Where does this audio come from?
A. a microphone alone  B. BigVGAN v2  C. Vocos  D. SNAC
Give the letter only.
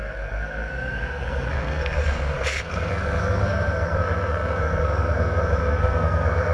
D